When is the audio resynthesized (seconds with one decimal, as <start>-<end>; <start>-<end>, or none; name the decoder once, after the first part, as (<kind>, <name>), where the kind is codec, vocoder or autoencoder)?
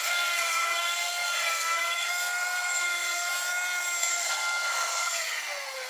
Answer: 0.0-3.3 (codec, SNAC); 4.1-5.9